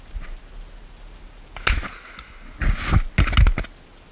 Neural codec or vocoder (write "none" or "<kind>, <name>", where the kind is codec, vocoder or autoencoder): none